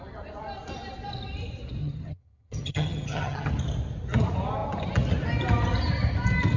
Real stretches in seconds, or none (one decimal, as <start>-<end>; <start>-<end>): 0.0-1.8; 3.5-6.6